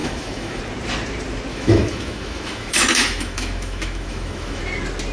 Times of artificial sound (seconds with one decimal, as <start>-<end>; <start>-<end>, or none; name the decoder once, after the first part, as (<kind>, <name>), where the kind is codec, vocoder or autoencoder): 0.0-0.6 (autoencoder, DAC-VAE); 1.5-4.6